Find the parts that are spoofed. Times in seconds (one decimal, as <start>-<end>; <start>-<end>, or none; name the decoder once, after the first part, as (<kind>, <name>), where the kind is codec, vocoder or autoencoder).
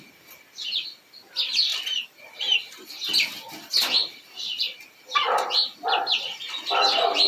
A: none